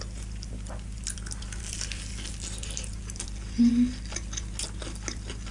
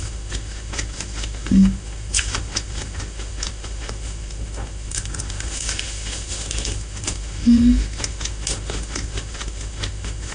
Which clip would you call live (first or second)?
first